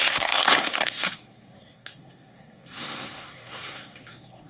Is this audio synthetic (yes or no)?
yes